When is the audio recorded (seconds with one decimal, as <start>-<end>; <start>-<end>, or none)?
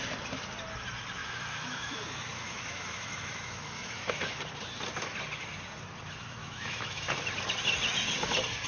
0.0-1.2; 4.4-6.4; 7.2-8.7